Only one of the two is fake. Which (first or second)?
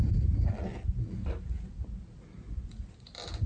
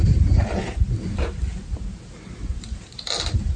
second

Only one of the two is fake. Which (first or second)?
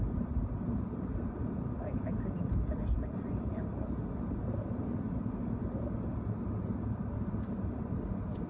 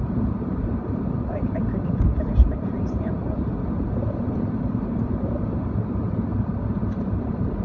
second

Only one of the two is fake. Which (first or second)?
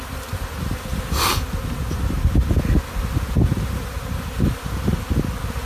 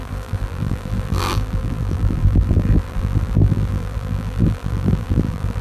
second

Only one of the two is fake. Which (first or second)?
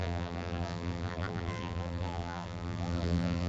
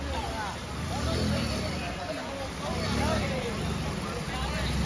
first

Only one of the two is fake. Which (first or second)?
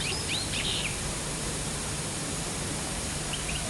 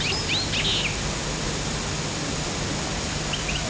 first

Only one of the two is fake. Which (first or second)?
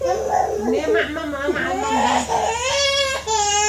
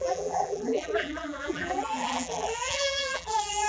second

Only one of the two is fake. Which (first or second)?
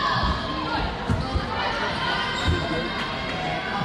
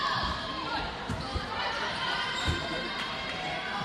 second